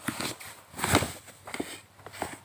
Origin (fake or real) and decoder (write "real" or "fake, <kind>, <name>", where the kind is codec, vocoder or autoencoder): real